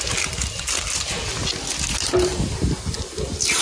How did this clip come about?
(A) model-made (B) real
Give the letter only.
B